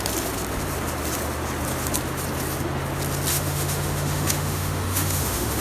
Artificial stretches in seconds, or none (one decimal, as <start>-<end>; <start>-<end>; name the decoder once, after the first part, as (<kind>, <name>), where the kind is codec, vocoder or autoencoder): 3.3-5.6 (autoencoder, DAC-VAE)